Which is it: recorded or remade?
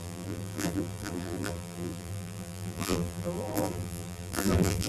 remade